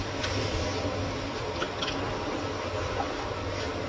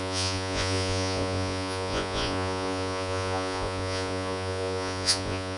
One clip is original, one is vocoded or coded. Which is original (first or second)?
first